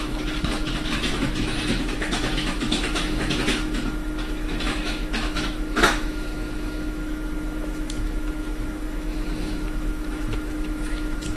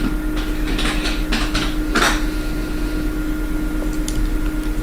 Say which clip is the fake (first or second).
first